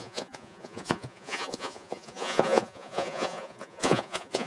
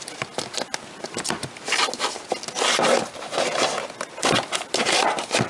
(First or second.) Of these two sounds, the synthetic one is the first